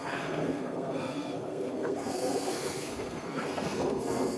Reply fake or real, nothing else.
fake